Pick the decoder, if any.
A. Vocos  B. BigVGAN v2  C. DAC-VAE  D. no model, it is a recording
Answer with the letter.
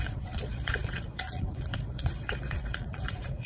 A